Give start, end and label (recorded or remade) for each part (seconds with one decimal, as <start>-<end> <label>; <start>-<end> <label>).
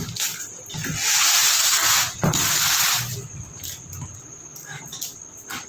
0.0-5.7 recorded